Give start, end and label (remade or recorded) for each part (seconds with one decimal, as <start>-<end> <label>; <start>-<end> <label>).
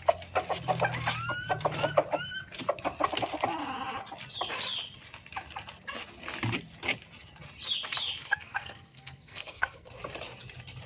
0.0-8.2 recorded; 8.2-9.9 remade; 9.9-10.9 recorded